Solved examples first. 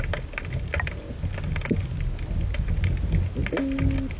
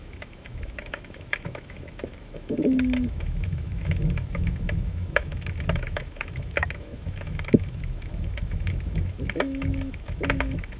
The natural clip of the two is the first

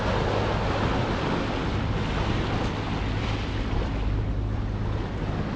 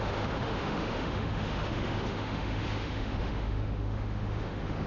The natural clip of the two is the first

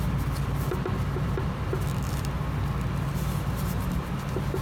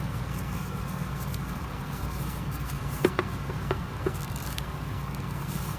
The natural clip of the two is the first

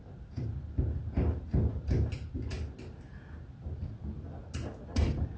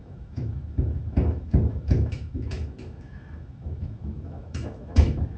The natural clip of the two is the first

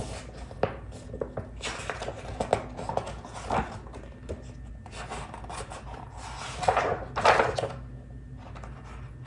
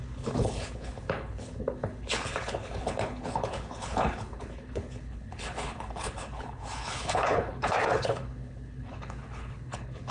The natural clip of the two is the first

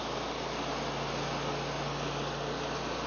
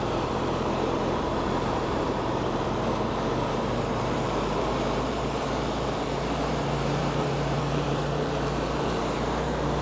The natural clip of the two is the first